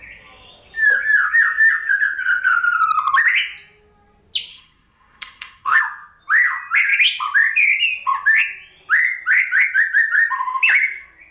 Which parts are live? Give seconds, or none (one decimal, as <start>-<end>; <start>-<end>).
0.0-4.5; 5.8-11.3